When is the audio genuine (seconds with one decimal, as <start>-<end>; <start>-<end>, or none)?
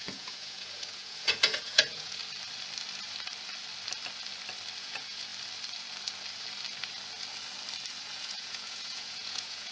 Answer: 2.2-4.8; 5.3-8.0